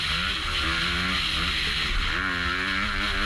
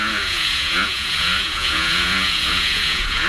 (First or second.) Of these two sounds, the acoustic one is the first